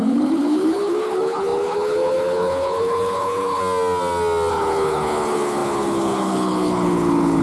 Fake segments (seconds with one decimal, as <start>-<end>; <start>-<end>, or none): 0.0-3.6; 4.5-7.4